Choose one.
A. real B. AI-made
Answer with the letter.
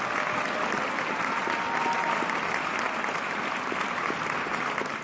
A